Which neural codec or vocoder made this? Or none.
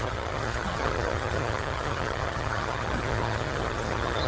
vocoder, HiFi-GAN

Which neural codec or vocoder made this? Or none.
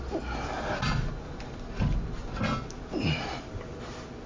none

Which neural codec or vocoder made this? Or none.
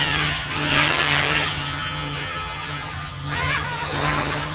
vocoder, HiFi-GAN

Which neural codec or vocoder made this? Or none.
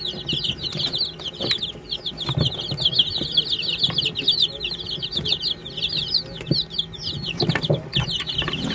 none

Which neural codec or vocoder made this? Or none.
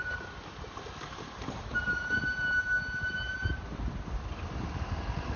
none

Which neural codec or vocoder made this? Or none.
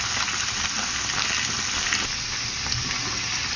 none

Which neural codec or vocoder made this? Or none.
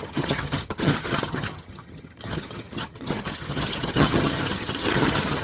vocoder, HiFi-GAN